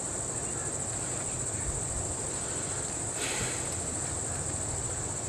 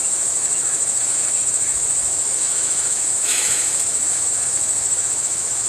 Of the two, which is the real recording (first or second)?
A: first